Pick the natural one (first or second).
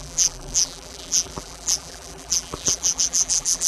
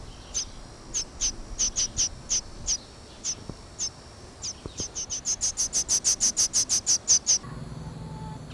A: second